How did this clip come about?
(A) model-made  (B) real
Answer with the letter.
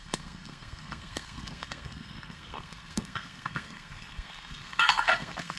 A